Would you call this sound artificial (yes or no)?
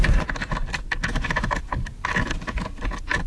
no